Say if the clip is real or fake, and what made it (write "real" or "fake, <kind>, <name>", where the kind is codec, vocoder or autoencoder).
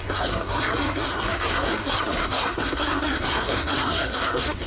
fake, codec, SNAC